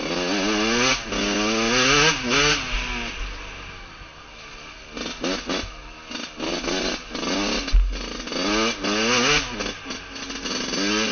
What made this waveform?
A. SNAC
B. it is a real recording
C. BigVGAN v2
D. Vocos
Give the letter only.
B